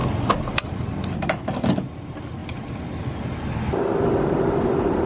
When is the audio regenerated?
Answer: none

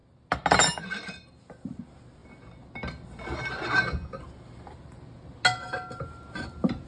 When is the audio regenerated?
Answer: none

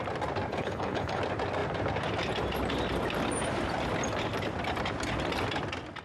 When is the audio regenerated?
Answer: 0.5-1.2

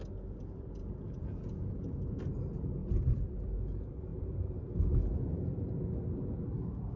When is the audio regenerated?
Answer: 0.8-2.2

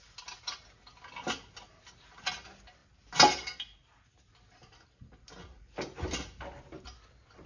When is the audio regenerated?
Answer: none

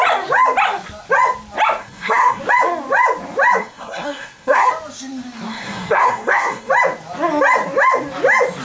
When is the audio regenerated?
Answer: 1.8-2.4; 3.6-4.7; 5.5-6.7

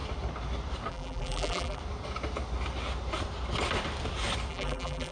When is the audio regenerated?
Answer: 0.9-1.8; 4.5-5.1